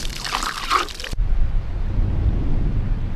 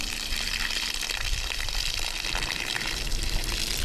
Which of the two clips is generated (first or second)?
second